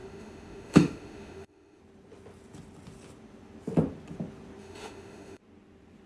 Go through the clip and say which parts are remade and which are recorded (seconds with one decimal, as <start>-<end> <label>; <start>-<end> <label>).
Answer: 0.0-1.8 remade; 1.8-4.6 recorded; 4.6-5.4 remade; 5.4-6.1 recorded